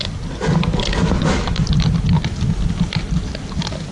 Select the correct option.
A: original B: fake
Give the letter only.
A